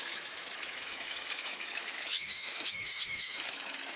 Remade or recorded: remade